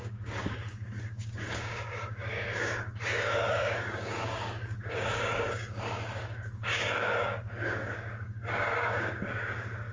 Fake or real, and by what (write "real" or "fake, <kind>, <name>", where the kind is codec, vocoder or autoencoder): fake, codec, DAC